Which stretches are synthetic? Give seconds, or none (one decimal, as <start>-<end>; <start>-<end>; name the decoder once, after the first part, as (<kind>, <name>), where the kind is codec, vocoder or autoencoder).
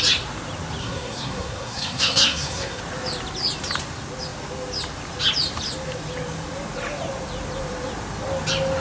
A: 0.8-2.8 (codec, SNAC)